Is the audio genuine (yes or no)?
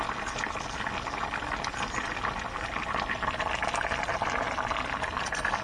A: yes